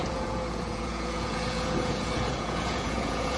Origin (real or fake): fake